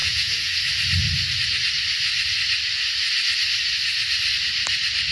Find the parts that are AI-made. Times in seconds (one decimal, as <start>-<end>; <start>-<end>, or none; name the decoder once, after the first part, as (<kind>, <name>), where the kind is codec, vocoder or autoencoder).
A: 0.0-0.5 (vocoder, Vocos)